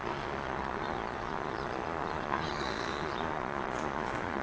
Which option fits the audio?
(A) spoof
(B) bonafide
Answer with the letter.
A